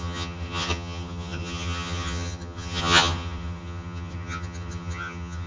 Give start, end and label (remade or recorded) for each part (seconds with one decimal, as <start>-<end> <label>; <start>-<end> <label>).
0.0-5.5 remade